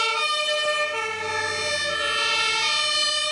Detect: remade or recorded recorded